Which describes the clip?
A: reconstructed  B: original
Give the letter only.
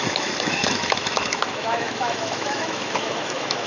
A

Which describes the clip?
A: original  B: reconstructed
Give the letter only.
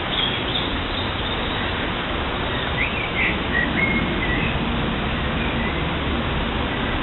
A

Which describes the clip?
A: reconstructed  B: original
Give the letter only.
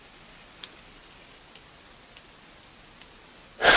B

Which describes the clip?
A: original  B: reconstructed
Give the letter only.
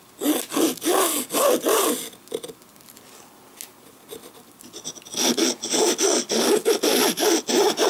A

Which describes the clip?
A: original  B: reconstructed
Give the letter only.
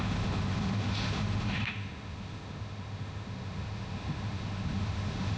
B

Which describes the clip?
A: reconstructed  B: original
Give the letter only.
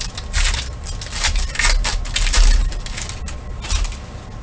B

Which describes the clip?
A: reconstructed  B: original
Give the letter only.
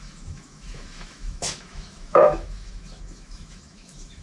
A